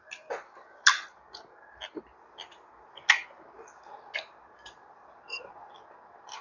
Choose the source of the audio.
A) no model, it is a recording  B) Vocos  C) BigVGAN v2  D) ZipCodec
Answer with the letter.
A